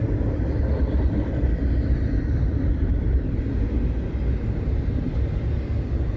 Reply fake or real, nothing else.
real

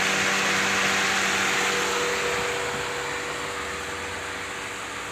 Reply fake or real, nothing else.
real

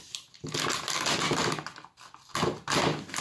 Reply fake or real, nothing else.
real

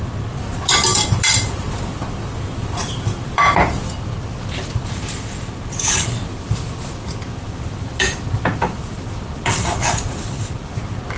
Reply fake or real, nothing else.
fake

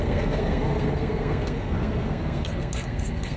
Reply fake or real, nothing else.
fake